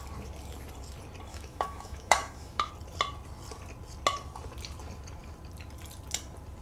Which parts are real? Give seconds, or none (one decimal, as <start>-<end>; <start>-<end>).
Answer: 0.0-1.3; 2.7-6.6